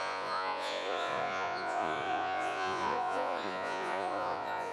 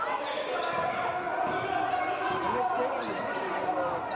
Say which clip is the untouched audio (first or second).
second